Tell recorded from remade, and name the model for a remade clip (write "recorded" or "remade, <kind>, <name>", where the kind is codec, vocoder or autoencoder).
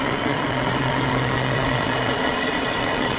remade, vocoder, Vocos